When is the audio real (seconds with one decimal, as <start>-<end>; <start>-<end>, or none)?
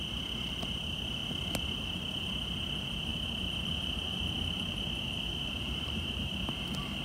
0.0-3.1; 6.3-7.0